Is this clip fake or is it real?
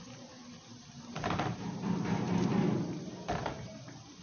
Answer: fake